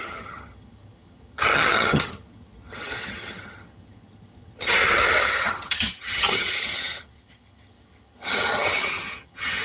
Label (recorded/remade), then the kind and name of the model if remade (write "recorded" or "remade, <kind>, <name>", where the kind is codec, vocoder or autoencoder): remade, vocoder, HiFi-GAN